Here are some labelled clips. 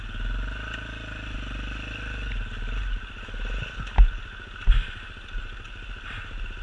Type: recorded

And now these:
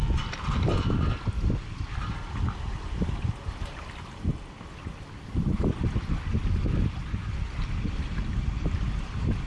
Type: recorded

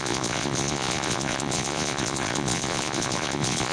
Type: remade